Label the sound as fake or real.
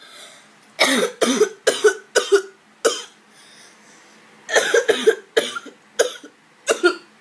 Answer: real